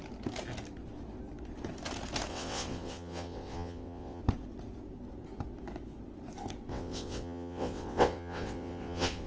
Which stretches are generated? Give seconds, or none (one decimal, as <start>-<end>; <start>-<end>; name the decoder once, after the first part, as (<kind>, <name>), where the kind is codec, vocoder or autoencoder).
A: 2.3-4.2 (vocoder, WaveNeXt); 6.7-9.3